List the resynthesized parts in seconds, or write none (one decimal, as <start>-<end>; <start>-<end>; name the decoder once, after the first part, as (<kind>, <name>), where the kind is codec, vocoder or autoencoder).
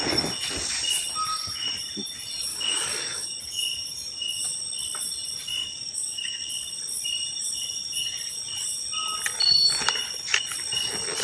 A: 2.5-3.4 (codec, DAC); 5.6-6.5